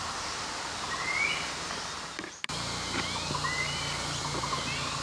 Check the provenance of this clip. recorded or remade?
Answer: recorded